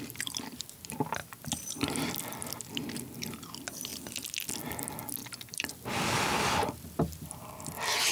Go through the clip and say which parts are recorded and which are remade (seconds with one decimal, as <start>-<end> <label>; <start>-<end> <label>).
0.0-5.2 recorded; 5.2-5.7 remade; 5.7-6.6 recorded; 6.6-8.1 remade